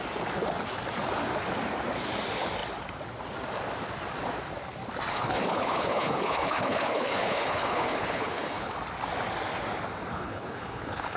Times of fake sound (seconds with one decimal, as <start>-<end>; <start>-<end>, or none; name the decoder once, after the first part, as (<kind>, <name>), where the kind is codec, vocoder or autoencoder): 5.1-8.7 (codec, HILCodec); 10.1-11.2